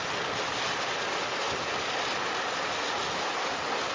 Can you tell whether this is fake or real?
real